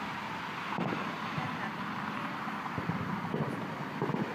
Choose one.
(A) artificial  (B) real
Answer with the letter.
B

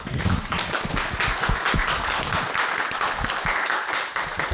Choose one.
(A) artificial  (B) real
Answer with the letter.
B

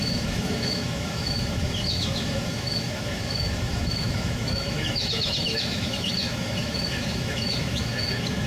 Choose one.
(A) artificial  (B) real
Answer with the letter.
A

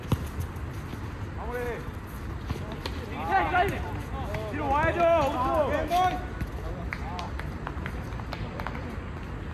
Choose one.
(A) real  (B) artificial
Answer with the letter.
A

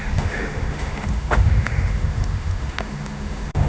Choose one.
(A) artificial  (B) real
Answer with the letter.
A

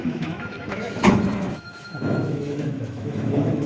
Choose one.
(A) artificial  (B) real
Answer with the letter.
A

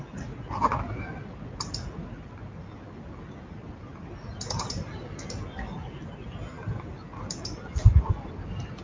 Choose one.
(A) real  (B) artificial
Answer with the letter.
A